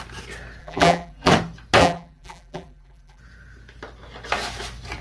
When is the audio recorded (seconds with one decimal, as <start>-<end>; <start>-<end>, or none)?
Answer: 0.0-0.6; 1.3-1.8; 3.2-5.0